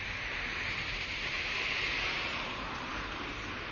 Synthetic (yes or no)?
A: yes